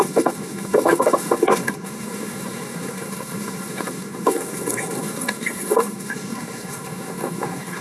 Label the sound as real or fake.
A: fake